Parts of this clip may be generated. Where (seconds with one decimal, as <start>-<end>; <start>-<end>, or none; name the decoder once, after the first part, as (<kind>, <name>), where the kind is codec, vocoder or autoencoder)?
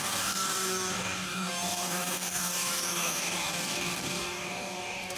0.0-5.2 (codec, DAC)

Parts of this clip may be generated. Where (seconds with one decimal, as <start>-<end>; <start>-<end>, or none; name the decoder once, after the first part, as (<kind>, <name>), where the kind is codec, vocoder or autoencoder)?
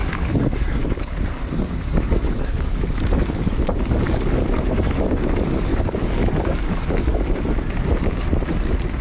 0.0-5.2 (codec, DAC); 5.7-7.3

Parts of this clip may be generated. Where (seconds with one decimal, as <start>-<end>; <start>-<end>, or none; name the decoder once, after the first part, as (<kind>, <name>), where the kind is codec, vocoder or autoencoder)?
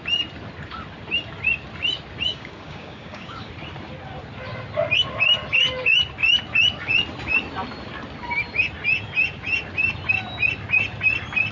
2.3-3.5 (codec, DAC)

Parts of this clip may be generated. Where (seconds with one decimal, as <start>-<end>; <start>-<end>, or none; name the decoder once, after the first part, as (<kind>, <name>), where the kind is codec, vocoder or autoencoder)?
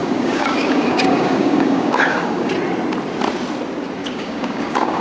0.0-2.5 (codec, DAC); 4.0-5.0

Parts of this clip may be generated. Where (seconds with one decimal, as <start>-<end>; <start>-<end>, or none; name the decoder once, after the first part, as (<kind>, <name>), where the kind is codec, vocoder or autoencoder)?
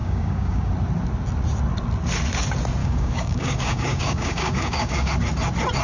0.0-0.7 (codec, DAC); 2.8-5.1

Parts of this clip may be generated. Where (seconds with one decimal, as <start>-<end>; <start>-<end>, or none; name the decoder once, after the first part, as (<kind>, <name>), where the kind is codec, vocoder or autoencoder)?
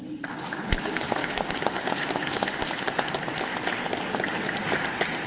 1.2-2.1 (codec, DAC)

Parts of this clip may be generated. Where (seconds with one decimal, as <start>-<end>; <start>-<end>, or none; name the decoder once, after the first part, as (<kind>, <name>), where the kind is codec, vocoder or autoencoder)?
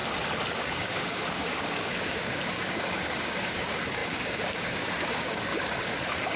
0.6-5.5 (codec, DAC)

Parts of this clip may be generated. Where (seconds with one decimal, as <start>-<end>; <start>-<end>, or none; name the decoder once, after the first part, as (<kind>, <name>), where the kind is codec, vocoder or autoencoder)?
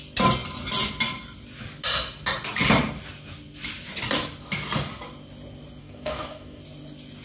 5.8-6.6 (codec, DAC)